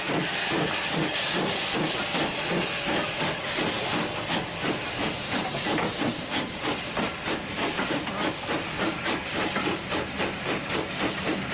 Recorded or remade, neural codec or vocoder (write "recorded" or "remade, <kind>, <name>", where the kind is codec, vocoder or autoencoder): recorded